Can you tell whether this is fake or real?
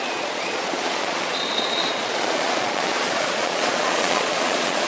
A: fake